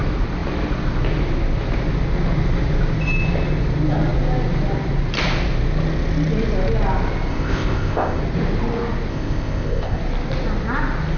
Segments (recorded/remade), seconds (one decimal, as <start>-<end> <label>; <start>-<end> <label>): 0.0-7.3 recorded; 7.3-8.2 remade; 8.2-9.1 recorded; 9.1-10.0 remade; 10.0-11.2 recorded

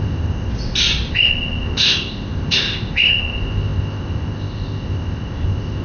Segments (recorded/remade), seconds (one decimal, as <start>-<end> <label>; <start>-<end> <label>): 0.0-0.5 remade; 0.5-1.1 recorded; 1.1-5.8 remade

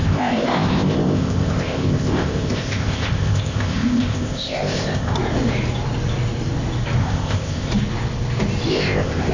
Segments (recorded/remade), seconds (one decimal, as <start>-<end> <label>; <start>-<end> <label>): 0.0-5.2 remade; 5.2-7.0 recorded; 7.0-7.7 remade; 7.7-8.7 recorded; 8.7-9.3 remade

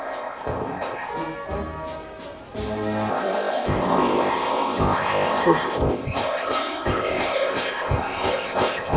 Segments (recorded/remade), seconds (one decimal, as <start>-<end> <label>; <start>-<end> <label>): 0.0-1.1 remade; 1.1-3.1 recorded; 3.1-9.0 remade